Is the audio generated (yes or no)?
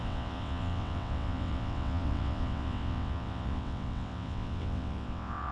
yes